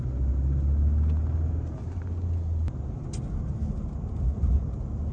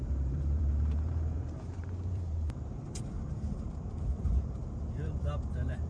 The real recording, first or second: first